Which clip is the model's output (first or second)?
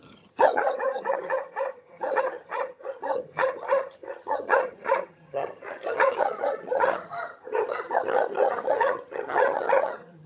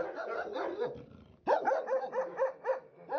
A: first